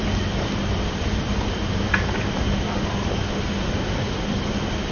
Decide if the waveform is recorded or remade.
recorded